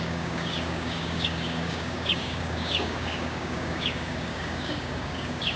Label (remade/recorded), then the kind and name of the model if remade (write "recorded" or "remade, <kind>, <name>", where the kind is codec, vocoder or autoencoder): remade, codec, DAC